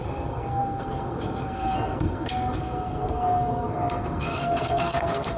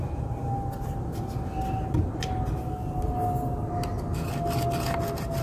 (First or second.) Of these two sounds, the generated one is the first